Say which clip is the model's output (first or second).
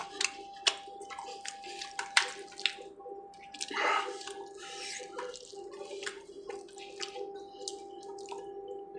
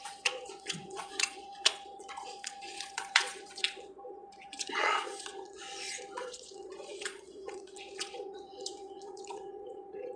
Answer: second